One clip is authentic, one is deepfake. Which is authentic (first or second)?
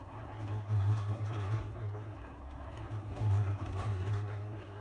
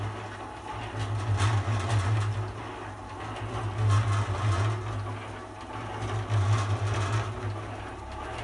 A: second